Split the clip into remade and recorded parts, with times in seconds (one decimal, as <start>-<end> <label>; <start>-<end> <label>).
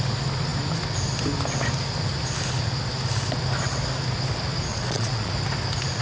0.0-4.7 recorded; 4.7-5.3 remade; 5.3-6.0 recorded